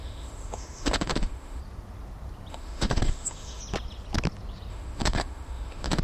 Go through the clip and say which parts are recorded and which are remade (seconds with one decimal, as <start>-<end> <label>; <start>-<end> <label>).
0.0-1.6 remade; 1.6-2.5 recorded; 2.5-3.6 remade; 3.6-4.7 recorded; 4.7-6.0 remade